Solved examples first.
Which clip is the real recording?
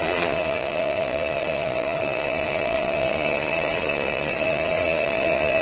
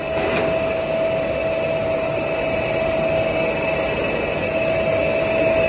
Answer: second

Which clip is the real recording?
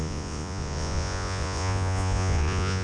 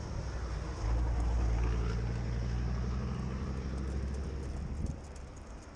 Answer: second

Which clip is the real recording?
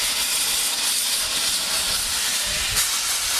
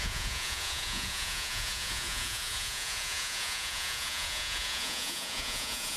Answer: first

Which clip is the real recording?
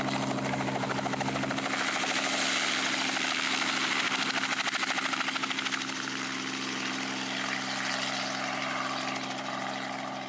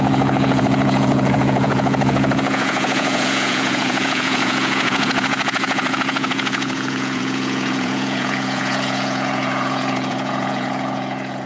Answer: first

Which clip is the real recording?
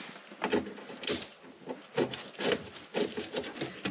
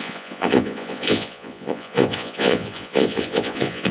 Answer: first